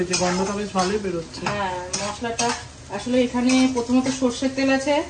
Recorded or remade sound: recorded